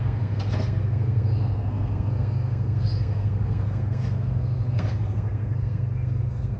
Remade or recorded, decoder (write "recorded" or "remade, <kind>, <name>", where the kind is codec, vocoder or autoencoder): remade, codec, SNAC